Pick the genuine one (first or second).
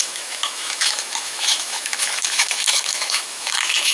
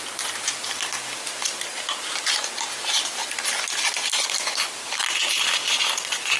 second